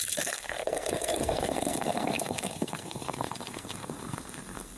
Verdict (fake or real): fake